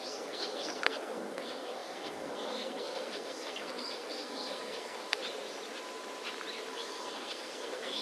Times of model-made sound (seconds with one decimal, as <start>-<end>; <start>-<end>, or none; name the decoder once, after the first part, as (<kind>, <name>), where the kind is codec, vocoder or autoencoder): 0.0-5.2 (codec, SNAC); 6.7-8.0